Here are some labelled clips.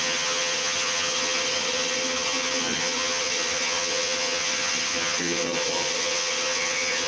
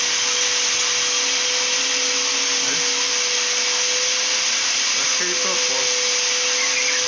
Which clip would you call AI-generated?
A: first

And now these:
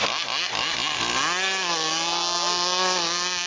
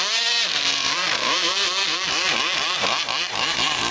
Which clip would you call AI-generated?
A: second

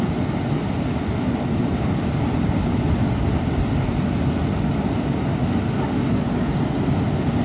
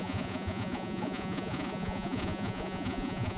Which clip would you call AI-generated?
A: second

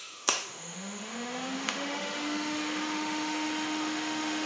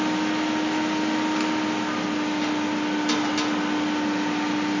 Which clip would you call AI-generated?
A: first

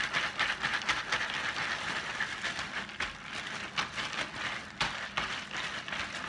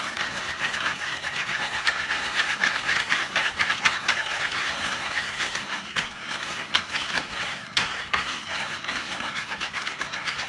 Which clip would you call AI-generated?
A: second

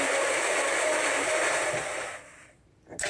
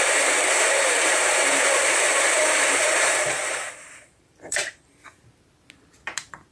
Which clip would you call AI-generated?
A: second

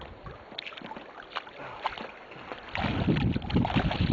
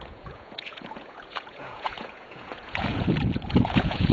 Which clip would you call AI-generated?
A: second